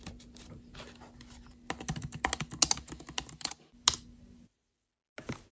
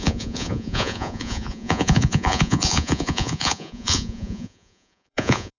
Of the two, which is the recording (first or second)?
first